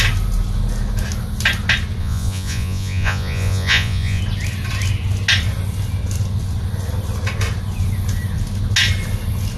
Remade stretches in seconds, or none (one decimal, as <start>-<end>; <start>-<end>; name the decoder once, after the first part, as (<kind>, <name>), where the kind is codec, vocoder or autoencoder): 2.0-4.2 (vocoder, Vocos)